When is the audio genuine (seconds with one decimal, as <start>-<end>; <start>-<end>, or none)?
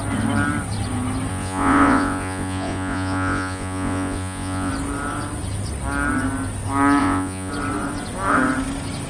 0.0-1.3; 4.7-7.0; 7.5-9.1